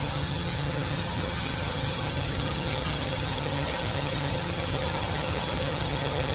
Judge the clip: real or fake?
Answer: fake